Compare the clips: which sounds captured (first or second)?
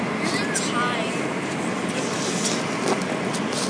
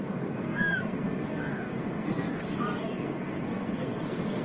first